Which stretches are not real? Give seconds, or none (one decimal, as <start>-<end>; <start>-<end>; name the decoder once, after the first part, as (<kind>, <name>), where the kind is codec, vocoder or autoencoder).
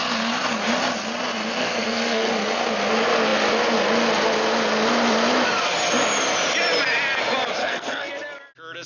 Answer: 1.6-2.3 (codec, SNAC); 7.6-8.1